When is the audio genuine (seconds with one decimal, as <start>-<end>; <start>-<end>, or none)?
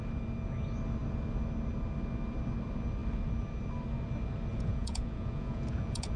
0.0-4.5